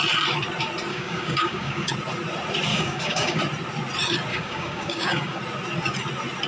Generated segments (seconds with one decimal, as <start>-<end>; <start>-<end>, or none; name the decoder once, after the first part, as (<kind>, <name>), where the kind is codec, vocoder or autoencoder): 0.9-1.9 (codec, DAC); 2.7-3.4; 4.3-5.4